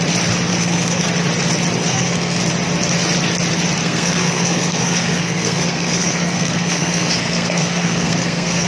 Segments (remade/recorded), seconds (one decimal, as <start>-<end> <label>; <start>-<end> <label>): 0.0-0.5 recorded; 0.5-1.1 remade; 1.1-1.9 recorded; 1.9-2.4 remade; 2.4-3.8 recorded; 3.8-8.7 remade